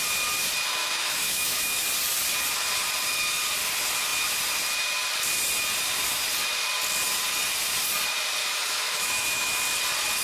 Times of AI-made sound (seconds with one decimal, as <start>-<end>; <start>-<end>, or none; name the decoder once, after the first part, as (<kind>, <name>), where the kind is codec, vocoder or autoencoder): 0.8-1.9 (autoencoder, DAC-VAE); 8.4-9.6